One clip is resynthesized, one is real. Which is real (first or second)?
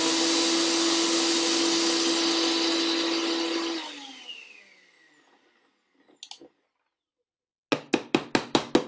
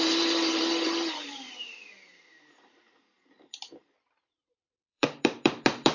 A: first